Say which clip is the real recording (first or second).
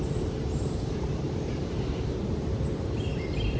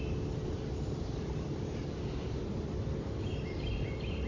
second